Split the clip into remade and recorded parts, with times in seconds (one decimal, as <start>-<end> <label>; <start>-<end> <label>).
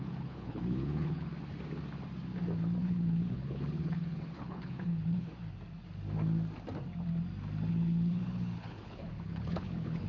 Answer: 0.0-1.3 remade; 1.3-2.8 recorded; 2.8-5.3 remade; 5.3-7.7 recorded; 7.7-10.1 remade